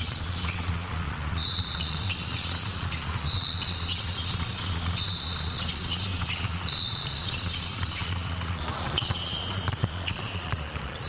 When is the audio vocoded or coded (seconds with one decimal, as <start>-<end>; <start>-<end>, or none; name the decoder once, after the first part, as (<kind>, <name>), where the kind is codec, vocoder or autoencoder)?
0.0-11.1 (vocoder, Vocos)

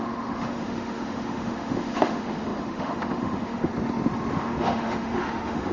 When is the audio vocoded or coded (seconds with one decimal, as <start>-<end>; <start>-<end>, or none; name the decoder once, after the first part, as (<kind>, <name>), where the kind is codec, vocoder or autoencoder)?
0.0-3.7 (autoencoder, DAC-VAE); 4.3-5.7